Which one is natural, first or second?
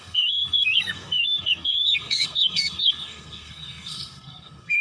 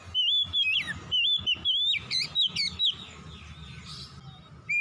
second